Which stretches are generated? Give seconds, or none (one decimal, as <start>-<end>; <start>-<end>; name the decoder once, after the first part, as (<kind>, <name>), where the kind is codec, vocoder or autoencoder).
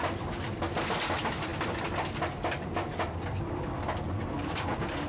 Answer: none